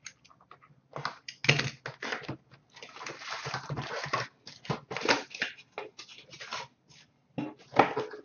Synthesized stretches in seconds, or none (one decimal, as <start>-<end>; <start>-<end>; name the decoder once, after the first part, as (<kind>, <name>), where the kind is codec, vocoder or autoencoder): 6.5-7.4 (vocoder, BigVGAN v2)